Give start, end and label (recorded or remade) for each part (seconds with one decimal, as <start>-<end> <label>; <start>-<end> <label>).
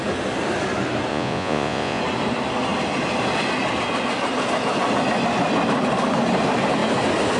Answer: 0.0-1.1 recorded; 1.1-2.0 remade; 2.0-7.4 recorded